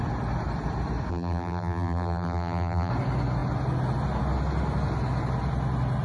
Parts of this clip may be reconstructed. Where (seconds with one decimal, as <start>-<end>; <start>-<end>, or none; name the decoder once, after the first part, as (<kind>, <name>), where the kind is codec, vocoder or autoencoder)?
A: 1.1-2.9 (vocoder, BigVGAN v2)